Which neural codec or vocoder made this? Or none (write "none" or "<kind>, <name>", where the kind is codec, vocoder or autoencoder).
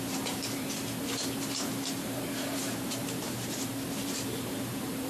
vocoder, BigVGAN v2